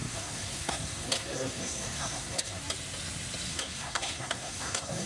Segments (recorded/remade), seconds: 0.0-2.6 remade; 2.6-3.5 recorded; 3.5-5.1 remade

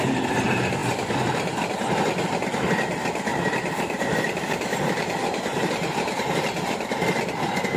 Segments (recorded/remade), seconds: 0.0-3.3 recorded; 3.3-4.2 remade; 4.2-5.5 recorded; 5.5-6.9 remade; 6.9-7.8 recorded

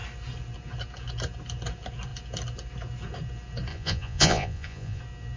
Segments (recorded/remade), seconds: 0.0-3.7 recorded; 3.7-5.0 remade; 5.0-5.4 recorded

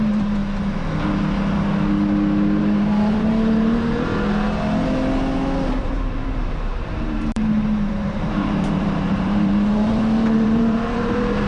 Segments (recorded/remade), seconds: 0.0-0.4 remade; 0.4-2.6 recorded; 2.6-4.1 remade; 4.1-5.8 recorded; 5.8-11.5 remade

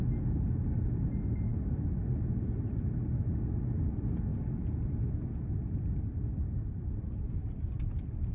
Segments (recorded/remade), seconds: 0.0-4.3 recorded; 4.3-7.8 remade; 7.8-8.3 recorded